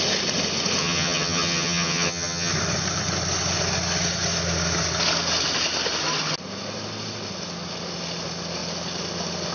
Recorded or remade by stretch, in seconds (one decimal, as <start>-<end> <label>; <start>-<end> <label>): 0.0-0.8 recorded; 0.8-2.5 remade; 2.5-9.5 recorded